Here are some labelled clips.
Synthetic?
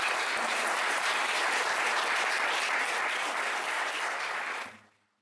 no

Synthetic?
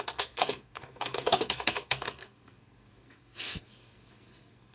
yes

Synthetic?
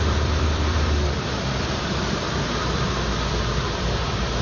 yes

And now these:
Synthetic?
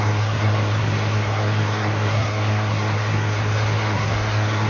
yes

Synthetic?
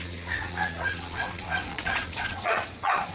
yes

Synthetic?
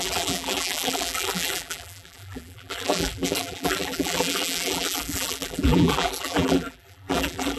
yes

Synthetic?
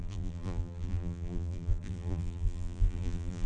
yes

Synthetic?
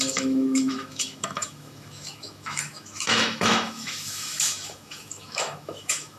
yes